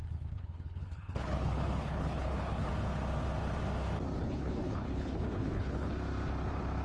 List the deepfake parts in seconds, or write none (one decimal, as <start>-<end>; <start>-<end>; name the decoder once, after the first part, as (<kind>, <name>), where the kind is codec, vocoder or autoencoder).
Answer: 0.0-2.7 (codec, HILCodec); 4.2-5.9